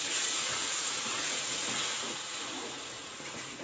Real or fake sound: fake